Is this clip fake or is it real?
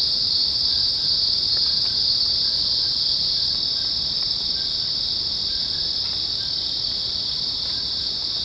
real